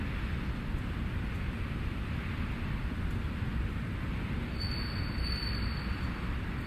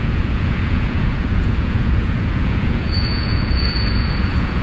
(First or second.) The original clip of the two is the first